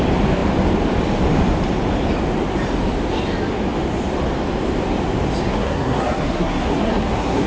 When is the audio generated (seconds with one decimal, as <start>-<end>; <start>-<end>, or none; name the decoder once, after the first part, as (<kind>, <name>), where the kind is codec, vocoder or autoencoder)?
5.5-7.5 (codec, SNAC)